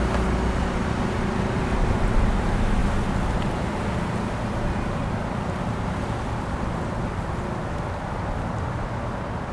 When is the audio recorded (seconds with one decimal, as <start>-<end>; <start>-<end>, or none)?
0.0-9.5